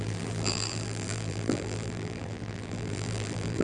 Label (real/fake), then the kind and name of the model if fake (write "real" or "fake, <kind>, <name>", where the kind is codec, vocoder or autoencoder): fake, vocoder, BigVGAN v2